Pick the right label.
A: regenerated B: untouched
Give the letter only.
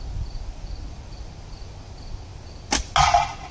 B